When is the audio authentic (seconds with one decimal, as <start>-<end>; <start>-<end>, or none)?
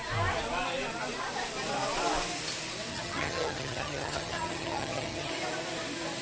0.0-2.9; 5.3-6.2